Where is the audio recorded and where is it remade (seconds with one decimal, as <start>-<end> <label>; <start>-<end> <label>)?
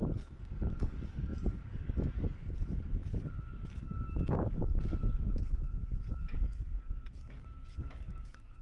0.0-8.6 remade